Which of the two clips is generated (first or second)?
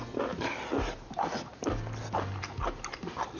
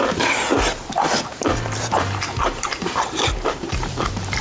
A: second